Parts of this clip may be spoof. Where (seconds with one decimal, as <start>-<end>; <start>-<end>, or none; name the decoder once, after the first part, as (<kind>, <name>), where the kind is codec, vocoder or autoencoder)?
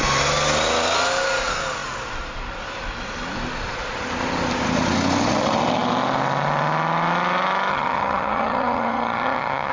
7.7-9.7 (vocoder, HiFi-GAN)